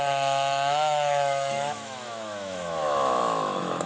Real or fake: fake